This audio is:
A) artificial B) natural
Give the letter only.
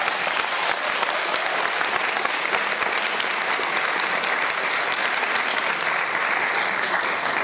B